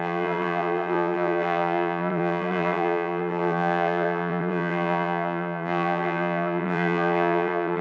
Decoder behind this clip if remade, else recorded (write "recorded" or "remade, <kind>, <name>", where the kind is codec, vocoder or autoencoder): remade, vocoder, BigVGAN v2